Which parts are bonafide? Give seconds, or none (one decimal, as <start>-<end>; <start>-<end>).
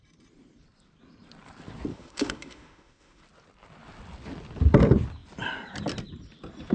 0.0-1.9; 3.2-6.7